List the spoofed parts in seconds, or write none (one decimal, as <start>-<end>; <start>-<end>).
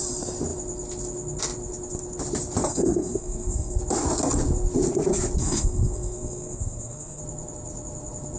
2.7-3.8; 5.4-7.2